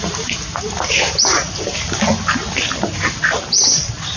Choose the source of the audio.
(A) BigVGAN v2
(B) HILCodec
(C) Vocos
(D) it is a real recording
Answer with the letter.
D